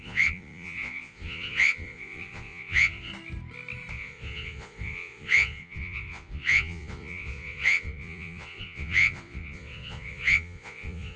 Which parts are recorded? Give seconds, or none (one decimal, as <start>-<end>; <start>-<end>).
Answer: 3.1-3.9